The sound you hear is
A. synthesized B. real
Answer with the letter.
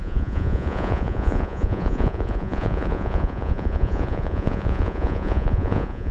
A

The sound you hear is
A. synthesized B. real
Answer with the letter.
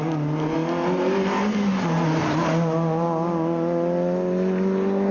B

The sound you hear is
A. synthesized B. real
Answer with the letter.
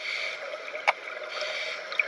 B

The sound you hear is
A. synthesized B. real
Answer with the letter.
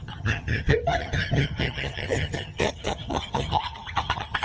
A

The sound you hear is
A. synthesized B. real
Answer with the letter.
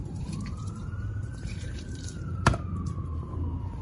A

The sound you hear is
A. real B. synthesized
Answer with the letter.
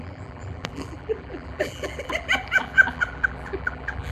B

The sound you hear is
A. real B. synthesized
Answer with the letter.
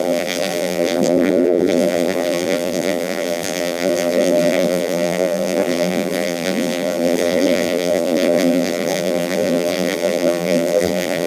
B